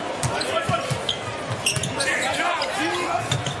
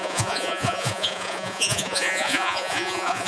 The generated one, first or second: second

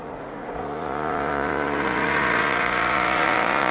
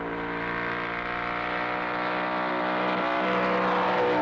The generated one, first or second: first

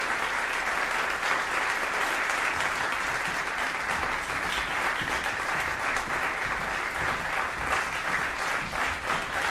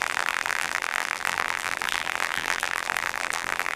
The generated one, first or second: second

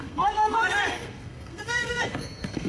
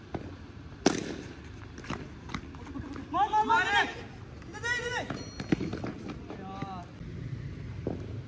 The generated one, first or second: first